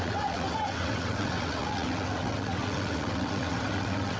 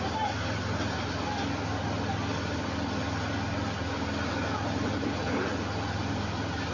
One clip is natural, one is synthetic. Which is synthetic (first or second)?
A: first